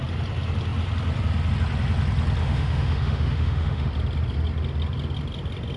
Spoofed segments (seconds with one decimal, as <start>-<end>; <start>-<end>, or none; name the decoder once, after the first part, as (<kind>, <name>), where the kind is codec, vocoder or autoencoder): 2.4-3.9 (autoencoder, DAC-VAE)